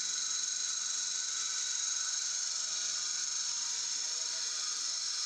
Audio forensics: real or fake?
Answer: fake